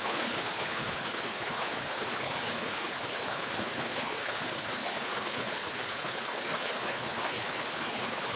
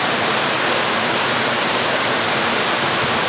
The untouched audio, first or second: second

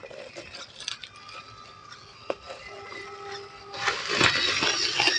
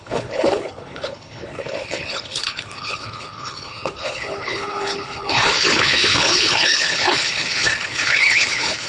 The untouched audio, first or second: first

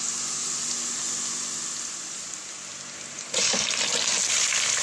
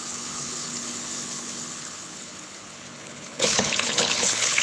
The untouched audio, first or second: first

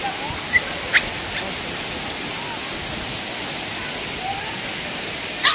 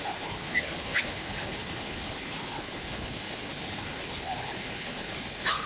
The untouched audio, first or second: first